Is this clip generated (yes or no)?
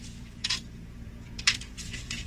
yes